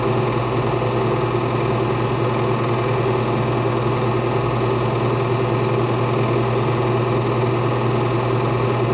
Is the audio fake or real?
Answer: real